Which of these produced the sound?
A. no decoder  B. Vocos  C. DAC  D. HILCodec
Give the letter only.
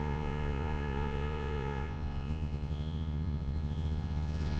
B